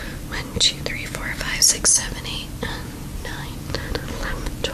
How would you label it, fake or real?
real